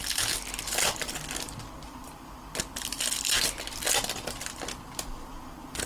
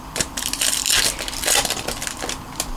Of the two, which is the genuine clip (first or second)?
first